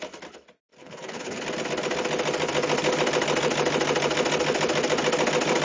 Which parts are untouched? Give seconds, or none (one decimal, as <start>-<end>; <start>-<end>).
0.0-0.8; 1.4-5.6